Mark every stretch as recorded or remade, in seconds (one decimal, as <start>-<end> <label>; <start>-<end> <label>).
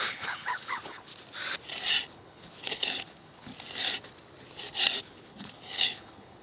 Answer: 0.0-1.1 remade; 1.1-2.1 recorded; 2.1-3.5 remade; 3.5-5.0 recorded; 5.0-6.4 remade